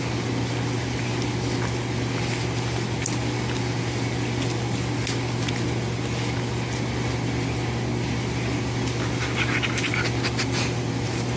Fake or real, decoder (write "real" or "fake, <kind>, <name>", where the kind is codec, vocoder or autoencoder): real